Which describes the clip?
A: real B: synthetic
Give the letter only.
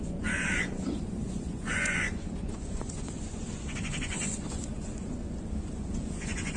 B